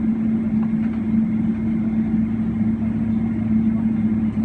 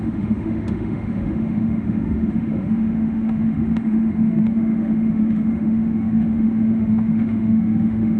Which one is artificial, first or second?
second